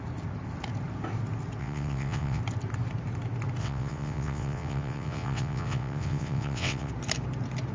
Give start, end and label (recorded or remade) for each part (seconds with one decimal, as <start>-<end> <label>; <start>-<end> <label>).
0.0-1.6 recorded; 1.6-2.4 remade; 2.4-3.6 recorded; 3.6-6.9 remade; 6.9-7.7 recorded